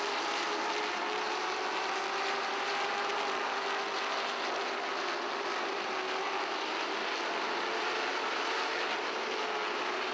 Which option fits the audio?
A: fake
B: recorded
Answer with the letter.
B